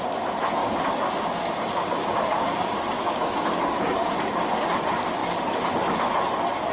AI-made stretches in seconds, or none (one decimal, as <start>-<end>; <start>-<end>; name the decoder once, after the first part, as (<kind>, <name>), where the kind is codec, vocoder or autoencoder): 0.6-4.6 (codec, DAC)